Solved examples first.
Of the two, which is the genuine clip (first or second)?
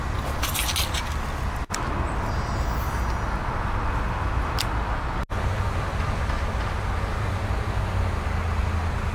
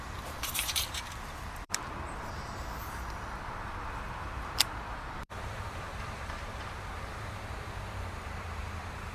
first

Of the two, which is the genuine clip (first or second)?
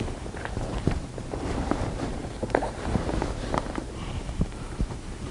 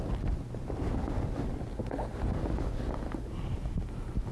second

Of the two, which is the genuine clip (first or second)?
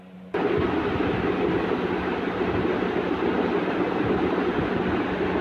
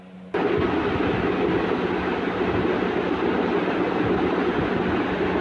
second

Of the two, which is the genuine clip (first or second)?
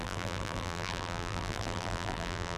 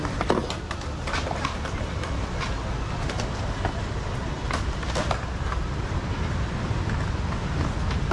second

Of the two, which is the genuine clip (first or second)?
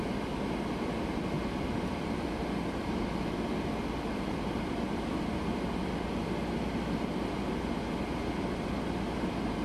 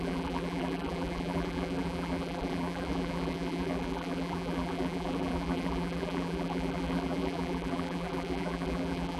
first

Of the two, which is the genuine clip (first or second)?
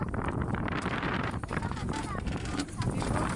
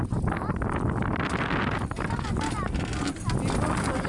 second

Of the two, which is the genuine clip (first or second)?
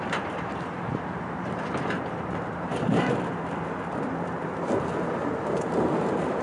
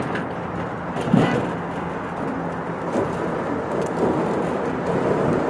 second